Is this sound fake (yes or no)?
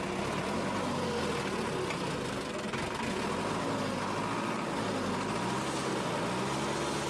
no